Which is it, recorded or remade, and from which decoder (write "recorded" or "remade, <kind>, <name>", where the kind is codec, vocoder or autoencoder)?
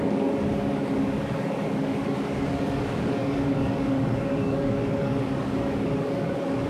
remade, codec, DAC